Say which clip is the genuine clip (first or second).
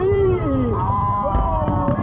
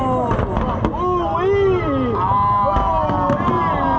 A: second